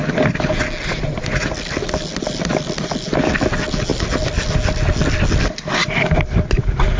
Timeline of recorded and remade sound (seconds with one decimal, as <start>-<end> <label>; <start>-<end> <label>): 0.0-7.0 recorded